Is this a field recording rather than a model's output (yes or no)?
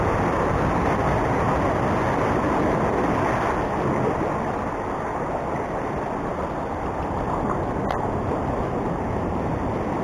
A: yes